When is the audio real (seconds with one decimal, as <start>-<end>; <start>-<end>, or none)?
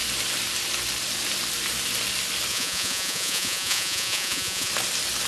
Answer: 0.0-2.5; 4.7-5.3